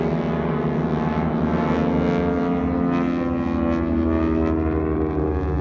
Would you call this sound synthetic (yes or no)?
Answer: no